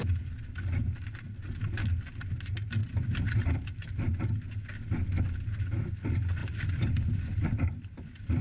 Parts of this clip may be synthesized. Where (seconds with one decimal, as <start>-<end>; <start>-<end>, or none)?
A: 2.8-3.8; 6.4-8.4